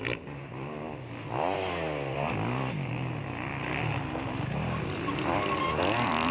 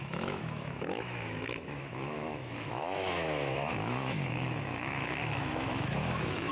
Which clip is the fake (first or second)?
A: second